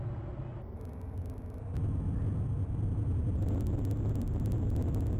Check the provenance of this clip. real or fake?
real